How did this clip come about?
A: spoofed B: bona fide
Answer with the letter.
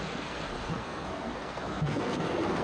A